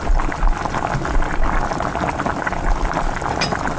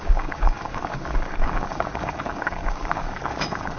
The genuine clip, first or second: first